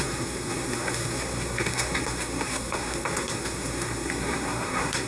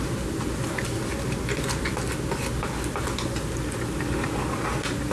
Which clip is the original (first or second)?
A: second